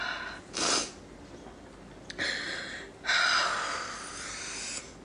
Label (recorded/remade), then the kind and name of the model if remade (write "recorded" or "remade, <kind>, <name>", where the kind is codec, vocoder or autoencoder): recorded